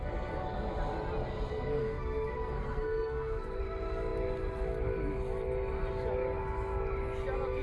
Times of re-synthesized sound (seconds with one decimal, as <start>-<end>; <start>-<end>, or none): 1.8-3.6